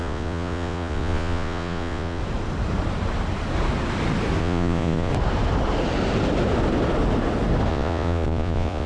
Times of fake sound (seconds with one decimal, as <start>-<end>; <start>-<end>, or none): 0.0-2.2; 4.4-5.1; 7.7-8.9